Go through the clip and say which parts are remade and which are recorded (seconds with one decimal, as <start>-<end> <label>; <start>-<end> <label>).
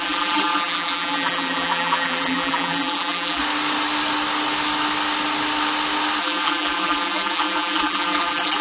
0.0-3.4 remade; 3.4-6.2 recorded; 6.2-8.6 remade